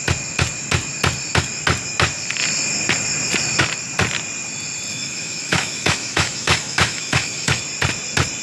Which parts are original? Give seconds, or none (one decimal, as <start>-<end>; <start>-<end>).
0.0-4.9; 7.6-8.4